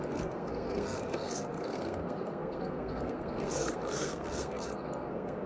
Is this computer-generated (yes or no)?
yes